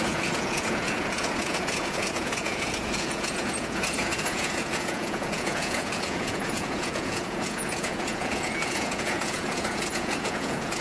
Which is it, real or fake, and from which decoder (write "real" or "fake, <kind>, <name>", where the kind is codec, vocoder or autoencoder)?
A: fake, vocoder, Vocos